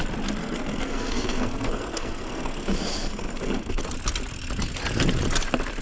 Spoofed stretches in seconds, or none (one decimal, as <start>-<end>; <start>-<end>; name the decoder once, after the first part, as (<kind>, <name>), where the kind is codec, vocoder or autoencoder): 0.4-3.8 (codec, SNAC)